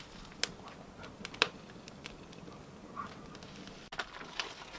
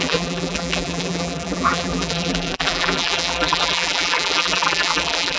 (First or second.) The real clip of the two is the first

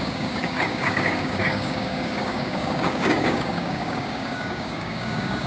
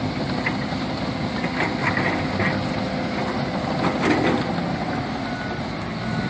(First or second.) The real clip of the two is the second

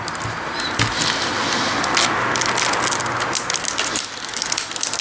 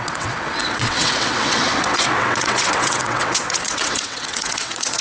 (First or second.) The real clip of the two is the first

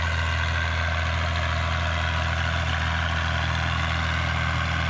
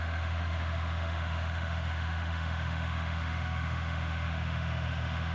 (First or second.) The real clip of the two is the first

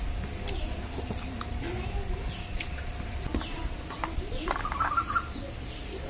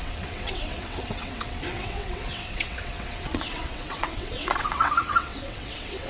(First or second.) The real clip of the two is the first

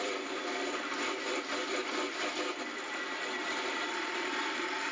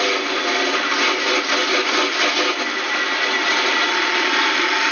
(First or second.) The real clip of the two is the second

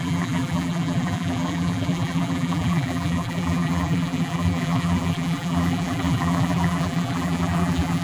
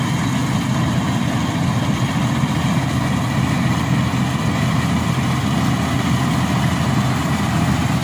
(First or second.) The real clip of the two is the second